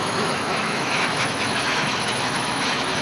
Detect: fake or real fake